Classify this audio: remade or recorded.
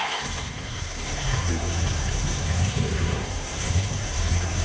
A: remade